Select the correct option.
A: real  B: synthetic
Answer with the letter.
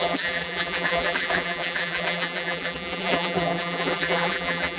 B